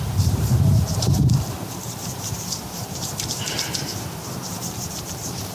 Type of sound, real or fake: fake